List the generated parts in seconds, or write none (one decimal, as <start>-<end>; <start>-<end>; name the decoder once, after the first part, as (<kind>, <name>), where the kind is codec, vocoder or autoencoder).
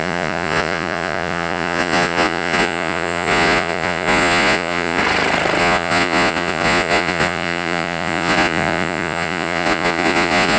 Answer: 0.0-5.0 (vocoder, Vocos); 5.6-10.6